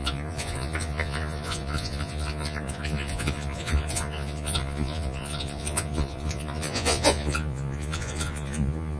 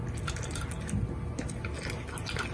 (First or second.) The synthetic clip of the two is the first